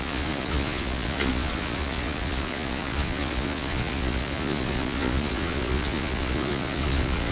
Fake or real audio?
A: fake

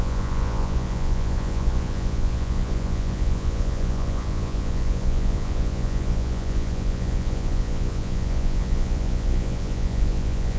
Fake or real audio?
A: fake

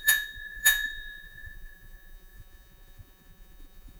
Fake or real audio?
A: fake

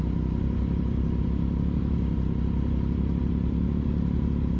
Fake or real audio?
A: real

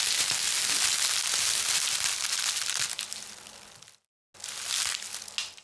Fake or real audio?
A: real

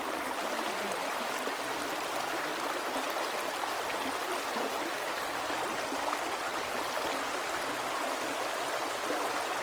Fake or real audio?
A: real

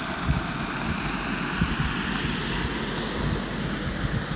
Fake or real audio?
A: real